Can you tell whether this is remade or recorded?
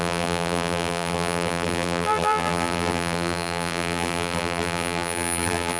remade